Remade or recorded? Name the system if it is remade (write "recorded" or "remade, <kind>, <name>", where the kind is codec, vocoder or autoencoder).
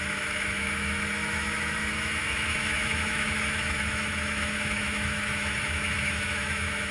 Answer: remade, autoencoder, DAC-VAE